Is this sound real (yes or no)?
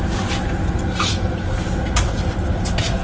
yes